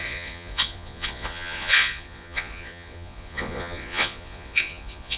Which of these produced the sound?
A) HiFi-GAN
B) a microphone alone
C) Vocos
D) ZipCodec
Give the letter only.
C